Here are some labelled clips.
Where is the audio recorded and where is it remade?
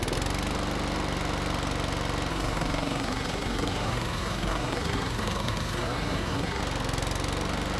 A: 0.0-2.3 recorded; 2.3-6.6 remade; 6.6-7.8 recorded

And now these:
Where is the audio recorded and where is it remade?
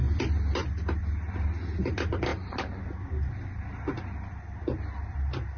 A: 0.0-5.6 recorded